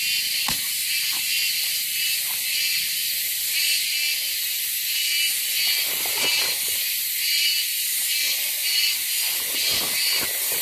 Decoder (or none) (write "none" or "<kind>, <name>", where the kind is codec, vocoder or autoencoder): none